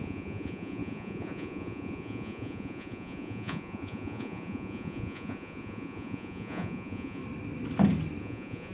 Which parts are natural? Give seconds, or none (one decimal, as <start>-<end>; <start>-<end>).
7.2-8.2